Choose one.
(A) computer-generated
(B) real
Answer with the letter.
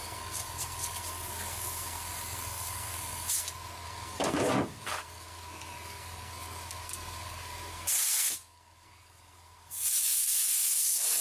A